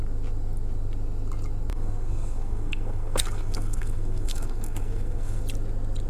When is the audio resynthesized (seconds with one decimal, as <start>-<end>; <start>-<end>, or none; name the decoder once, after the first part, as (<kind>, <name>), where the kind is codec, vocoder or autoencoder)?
1.7-5.4 (codec, SNAC)